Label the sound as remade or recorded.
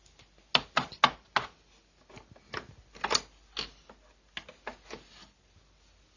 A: recorded